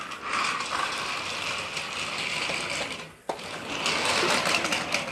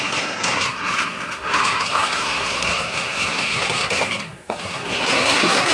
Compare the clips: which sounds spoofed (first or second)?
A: second